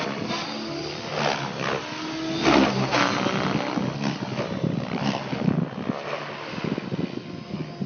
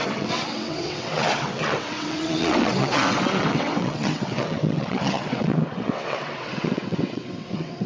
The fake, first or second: second